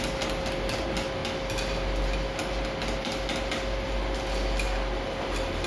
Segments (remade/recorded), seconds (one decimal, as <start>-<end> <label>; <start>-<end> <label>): 0.0-5.7 recorded

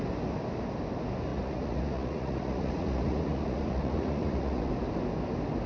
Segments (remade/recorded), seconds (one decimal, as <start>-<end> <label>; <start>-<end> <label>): 0.0-1.3 recorded; 1.3-4.7 remade; 4.7-5.7 recorded

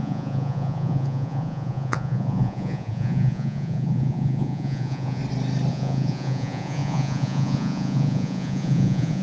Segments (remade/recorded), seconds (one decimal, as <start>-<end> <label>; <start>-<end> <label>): 0.0-5.2 remade; 5.2-5.7 recorded; 5.7-9.2 remade

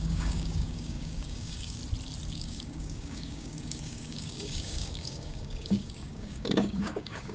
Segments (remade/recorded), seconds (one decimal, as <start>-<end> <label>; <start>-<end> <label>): 0.0-1.8 remade; 1.8-2.3 recorded; 2.3-7.3 remade

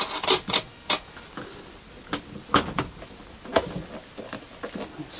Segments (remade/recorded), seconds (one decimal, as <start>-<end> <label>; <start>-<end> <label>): 0.0-5.2 recorded

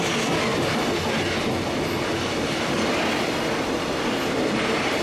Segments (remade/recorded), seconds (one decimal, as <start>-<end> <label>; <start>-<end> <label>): 0.0-5.0 recorded

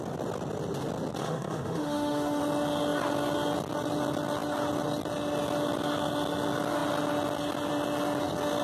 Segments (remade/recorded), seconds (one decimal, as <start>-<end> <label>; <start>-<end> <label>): 0.0-1.2 recorded; 1.2-2.4 remade; 2.4-8.6 recorded

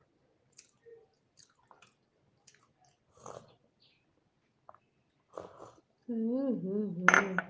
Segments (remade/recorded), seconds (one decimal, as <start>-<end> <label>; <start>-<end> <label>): 0.0-7.5 recorded